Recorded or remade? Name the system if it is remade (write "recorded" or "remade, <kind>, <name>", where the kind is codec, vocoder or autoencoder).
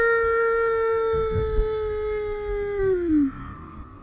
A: recorded